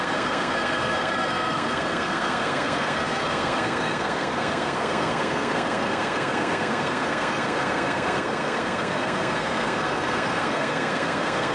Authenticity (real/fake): fake